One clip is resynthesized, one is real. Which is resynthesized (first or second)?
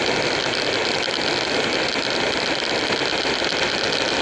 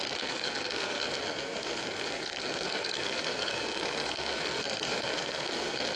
second